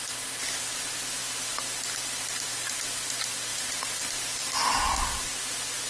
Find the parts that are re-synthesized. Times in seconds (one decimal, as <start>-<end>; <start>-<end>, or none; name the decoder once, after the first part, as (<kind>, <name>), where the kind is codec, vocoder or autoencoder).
3.5-4.8 (vocoder, BigVGAN v2)